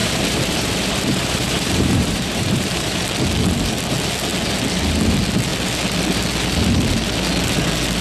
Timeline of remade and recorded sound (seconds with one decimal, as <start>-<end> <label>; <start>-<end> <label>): 0.0-3.0 remade; 3.0-8.0 recorded